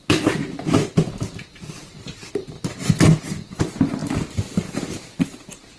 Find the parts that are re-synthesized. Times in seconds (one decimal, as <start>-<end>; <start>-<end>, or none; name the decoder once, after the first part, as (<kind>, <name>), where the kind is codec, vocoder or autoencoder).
0.4-3.2 (vocoder, BigVGAN v2)